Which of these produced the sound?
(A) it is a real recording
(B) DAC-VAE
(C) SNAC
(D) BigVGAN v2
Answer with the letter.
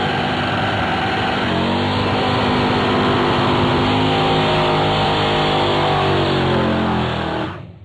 A